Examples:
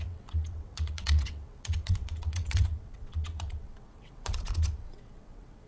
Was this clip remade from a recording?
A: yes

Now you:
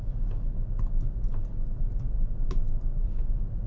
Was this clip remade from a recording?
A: no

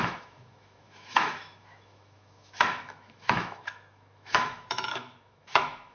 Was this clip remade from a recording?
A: yes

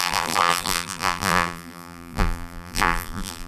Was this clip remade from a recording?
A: yes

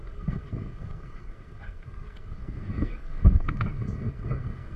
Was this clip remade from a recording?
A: yes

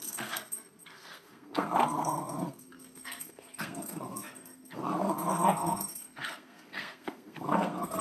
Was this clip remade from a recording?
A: yes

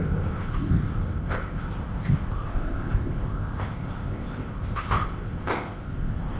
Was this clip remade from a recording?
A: yes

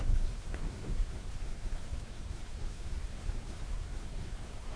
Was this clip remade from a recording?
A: yes